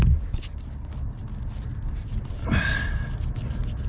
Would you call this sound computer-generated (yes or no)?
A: no